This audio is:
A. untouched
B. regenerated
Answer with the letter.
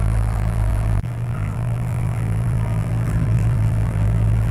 B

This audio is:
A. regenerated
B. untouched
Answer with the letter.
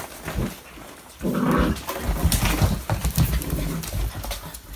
B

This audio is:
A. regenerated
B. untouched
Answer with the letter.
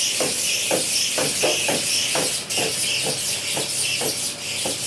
B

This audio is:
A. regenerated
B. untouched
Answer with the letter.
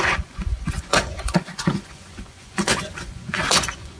A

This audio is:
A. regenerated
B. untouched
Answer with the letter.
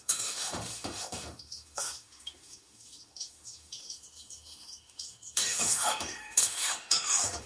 A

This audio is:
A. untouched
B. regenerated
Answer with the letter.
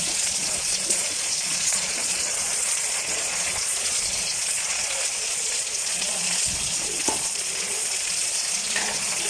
B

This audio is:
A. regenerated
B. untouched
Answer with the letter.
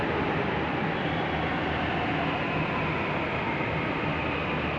B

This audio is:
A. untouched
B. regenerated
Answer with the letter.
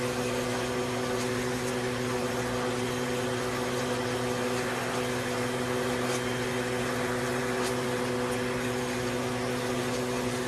A